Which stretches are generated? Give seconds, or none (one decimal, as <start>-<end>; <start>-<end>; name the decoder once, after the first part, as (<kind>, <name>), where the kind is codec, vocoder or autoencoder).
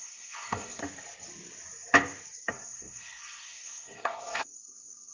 0.0-0.8 (codec, SNAC); 2.5-5.1